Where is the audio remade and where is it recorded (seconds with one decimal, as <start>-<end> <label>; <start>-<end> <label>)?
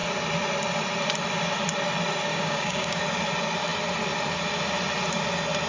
0.0-2.3 recorded; 2.3-3.0 remade; 3.0-5.7 recorded